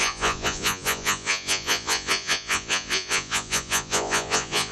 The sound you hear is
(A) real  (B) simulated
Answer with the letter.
B